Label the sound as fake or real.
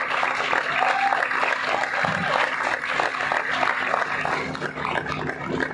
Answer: real